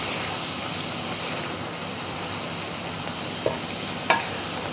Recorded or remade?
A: recorded